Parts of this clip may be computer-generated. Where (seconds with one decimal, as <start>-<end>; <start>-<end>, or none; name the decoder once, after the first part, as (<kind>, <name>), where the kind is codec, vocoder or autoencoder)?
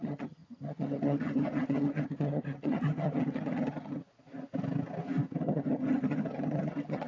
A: 0.0-4.0 (vocoder, HiFi-GAN); 5.4-7.1